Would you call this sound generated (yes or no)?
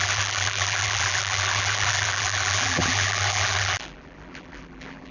yes